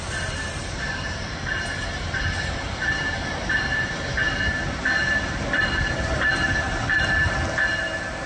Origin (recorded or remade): recorded